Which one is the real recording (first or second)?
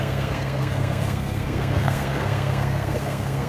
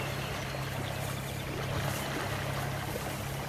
second